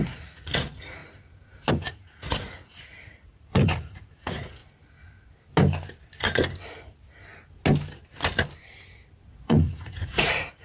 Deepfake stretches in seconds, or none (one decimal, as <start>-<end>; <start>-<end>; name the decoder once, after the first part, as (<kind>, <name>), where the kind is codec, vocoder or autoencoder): 0.0-1.0 (vocoder, Vocos); 1.7-4.6; 9.3-10.6